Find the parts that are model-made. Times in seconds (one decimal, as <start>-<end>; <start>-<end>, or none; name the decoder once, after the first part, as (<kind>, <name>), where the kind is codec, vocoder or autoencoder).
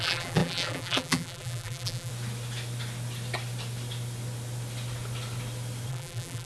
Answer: 0.0-2.1 (vocoder, BigVGAN v2); 5.9-6.4